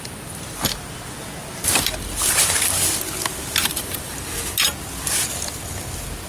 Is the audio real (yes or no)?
yes